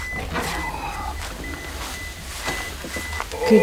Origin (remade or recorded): recorded